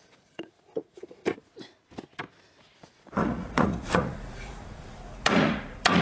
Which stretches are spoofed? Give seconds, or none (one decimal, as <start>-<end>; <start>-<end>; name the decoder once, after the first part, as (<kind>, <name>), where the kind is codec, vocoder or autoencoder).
0.0-1.5 (vocoder, Vocos); 2.6-6.0